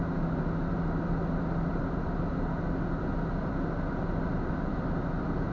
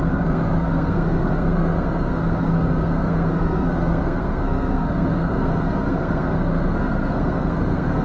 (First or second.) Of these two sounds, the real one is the first